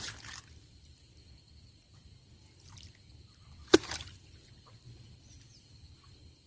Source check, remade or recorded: recorded